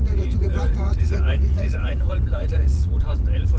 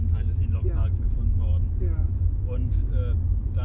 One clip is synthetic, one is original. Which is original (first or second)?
second